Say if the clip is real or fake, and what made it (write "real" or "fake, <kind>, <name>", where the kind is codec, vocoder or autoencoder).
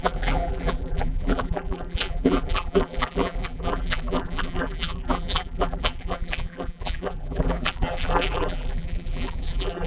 fake, vocoder, BigVGAN v2